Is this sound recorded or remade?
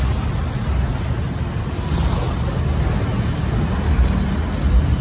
recorded